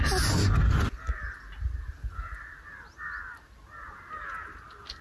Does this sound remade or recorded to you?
recorded